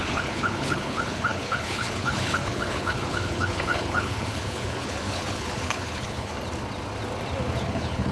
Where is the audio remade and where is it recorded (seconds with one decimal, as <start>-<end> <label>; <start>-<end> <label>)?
0.0-6.3 remade; 6.3-7.6 recorded; 7.6-8.1 remade